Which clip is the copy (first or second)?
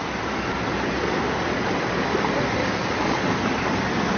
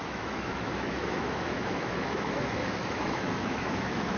second